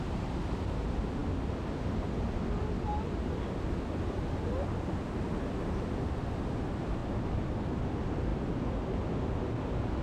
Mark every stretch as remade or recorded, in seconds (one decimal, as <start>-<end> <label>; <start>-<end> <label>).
0.0-7.0 recorded; 7.0-7.6 remade; 7.6-8.3 recorded; 8.3-8.9 remade; 8.9-10.0 recorded